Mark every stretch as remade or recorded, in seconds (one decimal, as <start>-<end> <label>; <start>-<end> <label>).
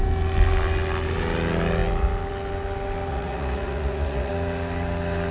0.0-3.1 recorded; 3.1-4.3 remade; 4.3-5.3 recorded